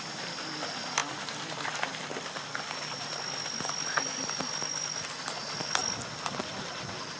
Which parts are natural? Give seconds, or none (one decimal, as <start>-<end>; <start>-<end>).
0.0-7.2